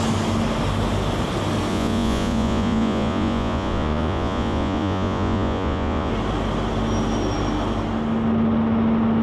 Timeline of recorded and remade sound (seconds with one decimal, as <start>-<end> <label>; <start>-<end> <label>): 0.0-1.7 recorded; 1.7-6.1 remade; 6.1-9.2 recorded